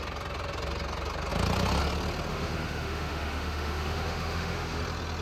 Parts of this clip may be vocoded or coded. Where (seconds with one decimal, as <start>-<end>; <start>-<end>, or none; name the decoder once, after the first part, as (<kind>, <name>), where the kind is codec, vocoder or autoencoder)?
2.3-4.8 (autoencoder, DAC-VAE)